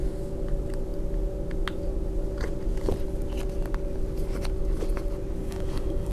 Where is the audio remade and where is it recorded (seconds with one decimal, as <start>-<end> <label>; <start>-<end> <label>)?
0.0-5.4 recorded; 5.4-6.1 remade